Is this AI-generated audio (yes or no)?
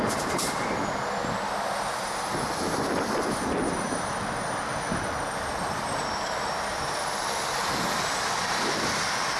no